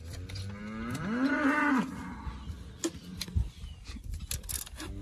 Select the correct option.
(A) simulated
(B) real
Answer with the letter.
B